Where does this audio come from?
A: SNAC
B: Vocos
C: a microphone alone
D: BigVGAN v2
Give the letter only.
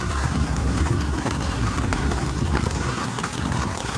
A